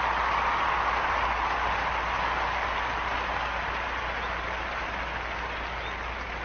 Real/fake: real